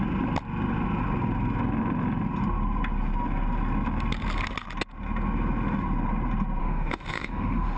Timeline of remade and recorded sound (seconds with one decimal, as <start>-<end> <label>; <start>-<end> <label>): 0.0-6.6 recorded; 6.6-7.8 remade